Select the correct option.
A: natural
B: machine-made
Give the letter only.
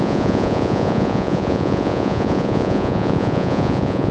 B